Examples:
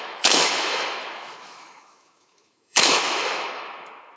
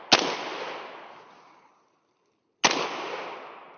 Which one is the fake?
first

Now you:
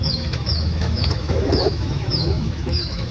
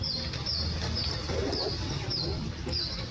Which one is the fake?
first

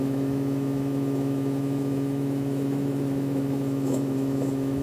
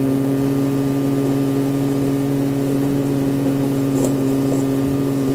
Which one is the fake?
first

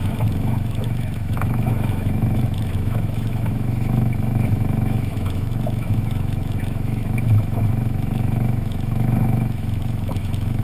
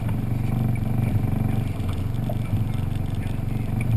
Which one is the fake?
first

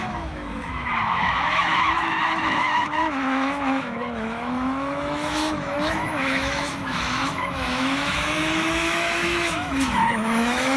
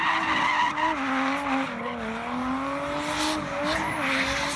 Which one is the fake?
first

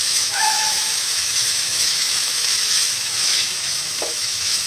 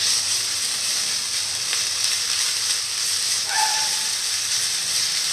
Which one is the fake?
first